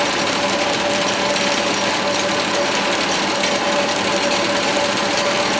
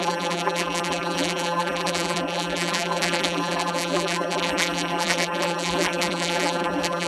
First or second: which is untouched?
first